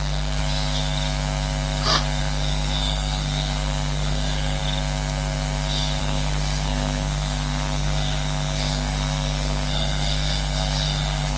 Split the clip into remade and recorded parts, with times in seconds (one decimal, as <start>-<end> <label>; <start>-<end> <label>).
0.0-0.4 remade; 0.4-2.2 recorded; 2.2-4.6 remade; 4.6-6.0 recorded; 6.0-11.4 remade